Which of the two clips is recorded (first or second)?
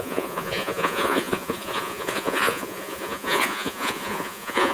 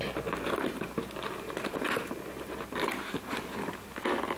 second